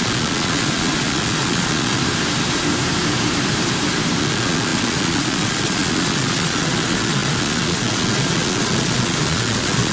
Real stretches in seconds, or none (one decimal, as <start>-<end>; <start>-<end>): 2.0-4.2